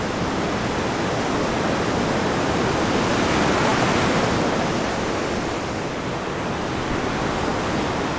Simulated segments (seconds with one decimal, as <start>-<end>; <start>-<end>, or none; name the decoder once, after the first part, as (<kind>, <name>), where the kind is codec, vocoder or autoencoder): none